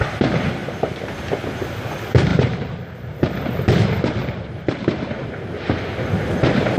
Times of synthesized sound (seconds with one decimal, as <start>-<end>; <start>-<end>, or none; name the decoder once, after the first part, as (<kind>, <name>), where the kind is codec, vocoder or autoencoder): 0.6-1.3 (vocoder, BigVGAN v2); 2.3-3.7; 4.2-4.8